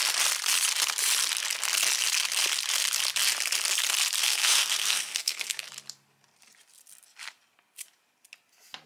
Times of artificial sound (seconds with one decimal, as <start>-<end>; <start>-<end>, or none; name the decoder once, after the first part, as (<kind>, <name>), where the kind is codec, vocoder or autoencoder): 4.2-5.7 (codec, SNAC)